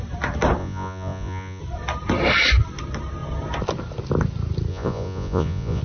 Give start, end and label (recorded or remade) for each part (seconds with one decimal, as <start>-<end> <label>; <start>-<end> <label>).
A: 0.0-0.6 recorded; 0.6-1.6 remade; 1.6-4.7 recorded; 4.7-5.8 remade